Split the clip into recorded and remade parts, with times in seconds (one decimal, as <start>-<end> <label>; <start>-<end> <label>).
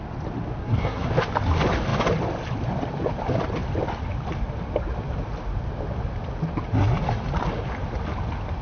0.0-0.6 recorded; 0.6-1.1 remade; 1.1-8.6 recorded